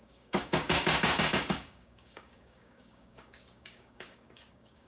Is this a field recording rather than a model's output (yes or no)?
no